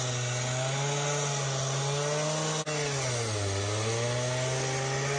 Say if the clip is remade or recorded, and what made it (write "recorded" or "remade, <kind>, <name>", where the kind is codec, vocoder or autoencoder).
recorded